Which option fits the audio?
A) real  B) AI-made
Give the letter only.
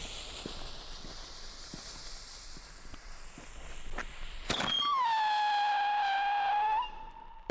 A